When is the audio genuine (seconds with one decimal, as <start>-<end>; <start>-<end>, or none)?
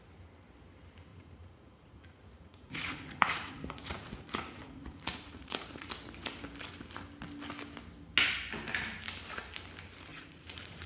0.0-1.1; 5.9-10.1